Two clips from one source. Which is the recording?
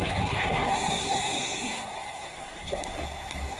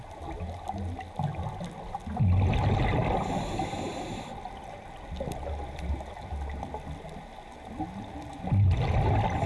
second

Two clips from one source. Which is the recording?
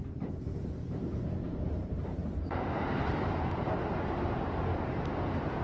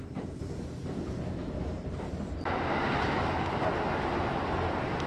second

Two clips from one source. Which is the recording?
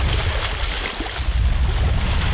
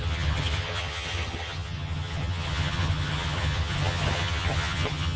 first